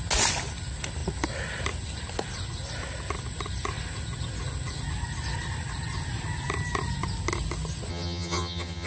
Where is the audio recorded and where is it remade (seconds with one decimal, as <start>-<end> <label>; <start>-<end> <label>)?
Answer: 0.0-7.9 recorded; 7.9-8.9 remade